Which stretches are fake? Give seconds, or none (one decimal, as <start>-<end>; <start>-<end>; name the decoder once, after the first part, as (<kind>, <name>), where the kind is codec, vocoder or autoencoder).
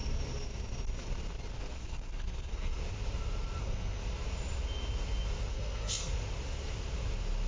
1.6-2.8 (codec, SNAC); 3.6-4.0; 5.5-6.2